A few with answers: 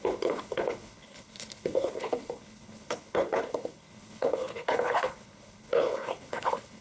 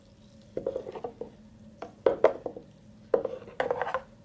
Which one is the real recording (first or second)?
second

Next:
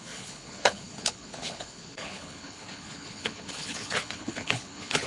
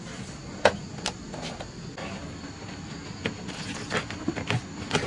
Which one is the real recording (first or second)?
second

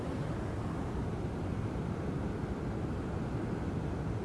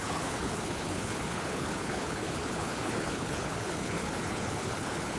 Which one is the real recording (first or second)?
first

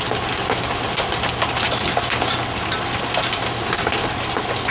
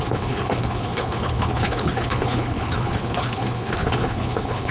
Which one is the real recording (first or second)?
first